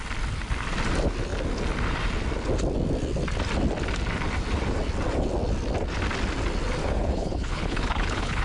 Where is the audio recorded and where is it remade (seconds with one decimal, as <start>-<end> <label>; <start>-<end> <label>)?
0.0-6.8 recorded; 6.8-8.4 remade